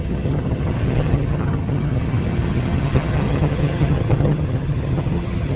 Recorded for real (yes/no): no